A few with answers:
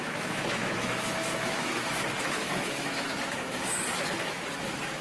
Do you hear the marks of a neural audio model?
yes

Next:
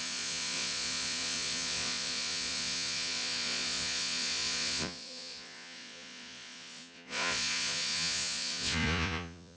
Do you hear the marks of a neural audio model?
yes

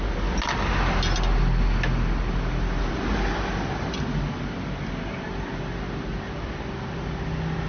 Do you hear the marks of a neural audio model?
no